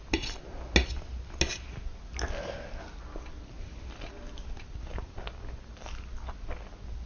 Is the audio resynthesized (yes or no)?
no